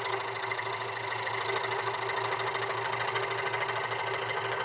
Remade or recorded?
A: recorded